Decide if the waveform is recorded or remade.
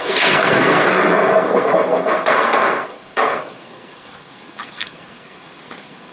remade